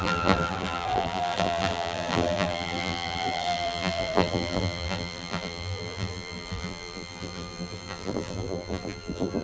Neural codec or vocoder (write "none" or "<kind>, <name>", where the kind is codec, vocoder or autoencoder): vocoder, BigVGAN v2